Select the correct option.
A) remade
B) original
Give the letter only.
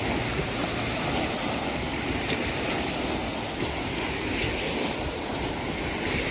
B